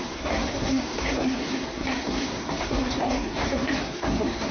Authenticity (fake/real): fake